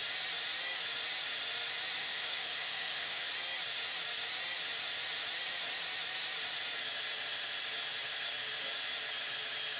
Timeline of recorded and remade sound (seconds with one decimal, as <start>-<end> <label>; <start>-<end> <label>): 0.0-2.0 recorded; 2.0-3.3 remade; 3.3-9.8 recorded

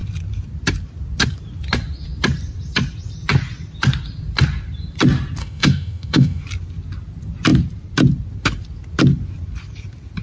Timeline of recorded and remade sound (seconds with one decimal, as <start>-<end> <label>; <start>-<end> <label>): 0.0-5.4 recorded; 5.4-6.4 remade; 6.4-10.2 recorded